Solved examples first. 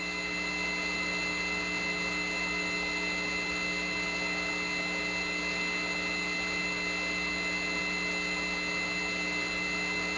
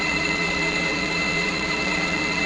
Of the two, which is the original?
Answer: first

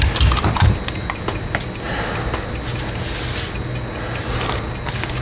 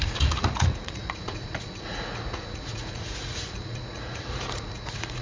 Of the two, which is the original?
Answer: first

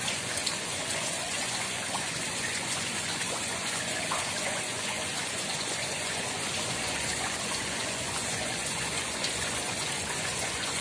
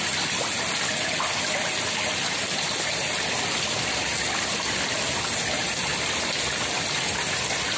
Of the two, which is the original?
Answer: second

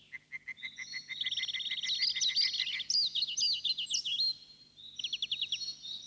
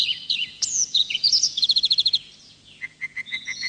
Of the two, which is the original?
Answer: first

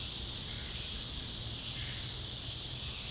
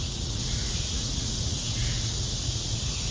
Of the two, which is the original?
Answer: first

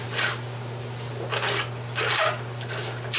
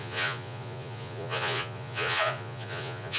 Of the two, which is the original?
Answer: first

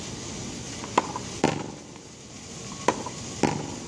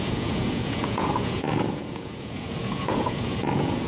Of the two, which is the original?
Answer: first